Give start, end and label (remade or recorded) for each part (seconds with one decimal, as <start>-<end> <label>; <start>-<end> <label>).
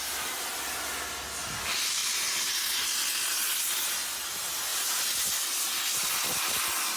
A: 0.0-2.0 recorded; 2.0-2.5 remade; 2.5-7.0 recorded